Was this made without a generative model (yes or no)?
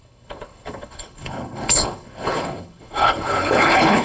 no